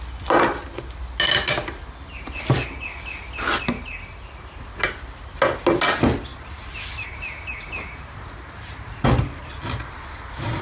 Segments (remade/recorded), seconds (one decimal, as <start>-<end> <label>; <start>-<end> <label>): 0.0-10.6 recorded